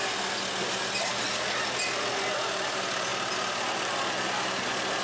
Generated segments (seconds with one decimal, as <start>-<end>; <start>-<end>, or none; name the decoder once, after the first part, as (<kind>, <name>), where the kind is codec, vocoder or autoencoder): none